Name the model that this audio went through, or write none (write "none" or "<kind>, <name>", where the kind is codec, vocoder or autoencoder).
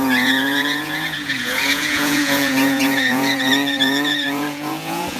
vocoder, Vocos